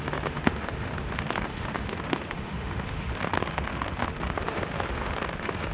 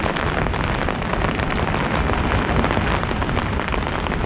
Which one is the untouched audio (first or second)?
second